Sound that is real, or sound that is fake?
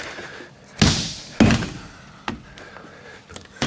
real